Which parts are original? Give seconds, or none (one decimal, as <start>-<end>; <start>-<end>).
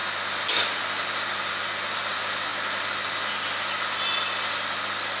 0.0-5.2